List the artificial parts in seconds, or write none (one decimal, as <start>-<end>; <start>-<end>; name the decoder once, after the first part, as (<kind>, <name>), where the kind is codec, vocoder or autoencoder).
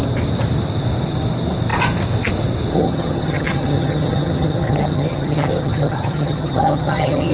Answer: 2.7-7.3 (vocoder, HiFi-GAN)